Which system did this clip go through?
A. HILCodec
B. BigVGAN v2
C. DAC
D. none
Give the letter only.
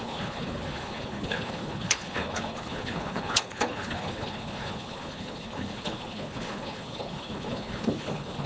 A